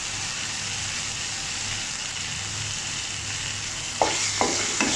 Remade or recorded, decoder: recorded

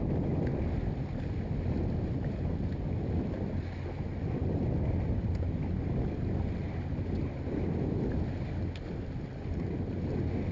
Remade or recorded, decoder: recorded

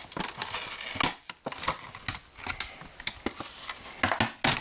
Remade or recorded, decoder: recorded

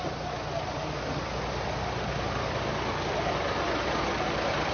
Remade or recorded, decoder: recorded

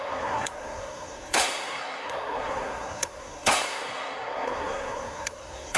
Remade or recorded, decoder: remade, codec, SNAC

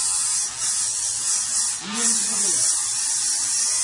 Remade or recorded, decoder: recorded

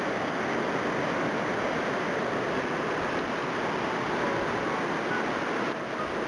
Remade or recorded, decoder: recorded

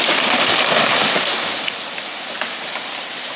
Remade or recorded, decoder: recorded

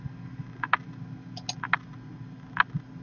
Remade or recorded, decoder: recorded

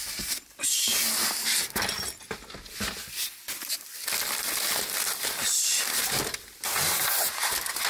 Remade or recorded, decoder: recorded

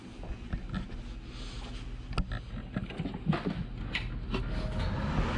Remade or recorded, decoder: recorded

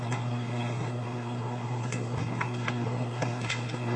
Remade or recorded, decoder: remade, codec, SNAC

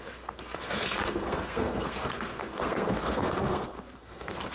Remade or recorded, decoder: remade, codec, SNAC